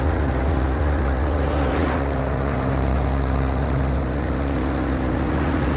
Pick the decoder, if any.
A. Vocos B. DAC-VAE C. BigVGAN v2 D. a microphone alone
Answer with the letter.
A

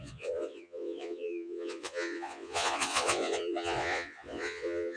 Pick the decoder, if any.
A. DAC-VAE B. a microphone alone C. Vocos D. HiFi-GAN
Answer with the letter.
C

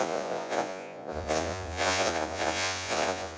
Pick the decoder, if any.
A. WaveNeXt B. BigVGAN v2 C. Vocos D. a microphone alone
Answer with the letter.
C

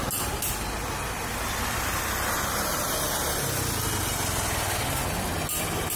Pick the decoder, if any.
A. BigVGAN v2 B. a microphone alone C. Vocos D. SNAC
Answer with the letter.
B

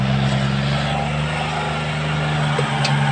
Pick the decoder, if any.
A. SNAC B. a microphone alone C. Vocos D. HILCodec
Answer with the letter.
B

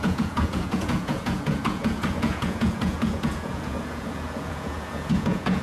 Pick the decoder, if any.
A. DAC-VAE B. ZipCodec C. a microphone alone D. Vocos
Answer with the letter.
D